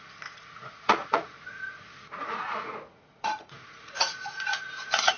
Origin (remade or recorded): remade